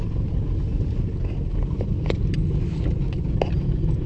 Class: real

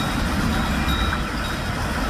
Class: real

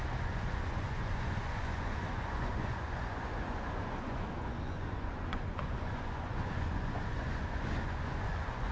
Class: fake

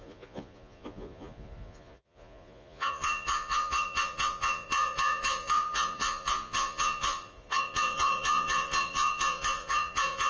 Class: fake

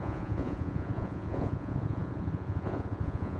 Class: fake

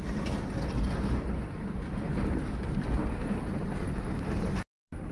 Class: real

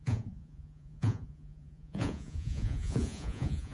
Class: fake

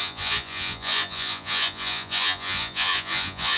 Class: fake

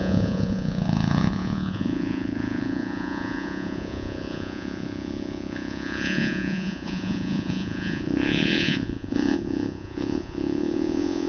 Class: fake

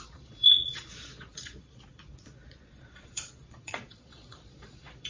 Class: fake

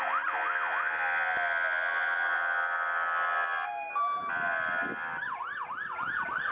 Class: real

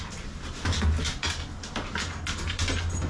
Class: real